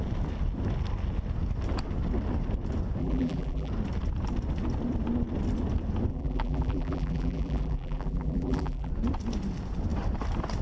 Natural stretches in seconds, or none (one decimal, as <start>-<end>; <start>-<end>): 0.0-3.0; 3.7-6.1; 8.9-10.6